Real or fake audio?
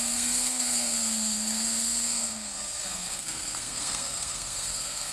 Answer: fake